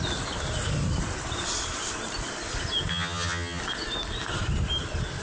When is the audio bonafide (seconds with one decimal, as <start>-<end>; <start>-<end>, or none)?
0.0-2.9; 3.6-5.2